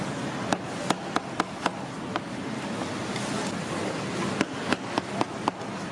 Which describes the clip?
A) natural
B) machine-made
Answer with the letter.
A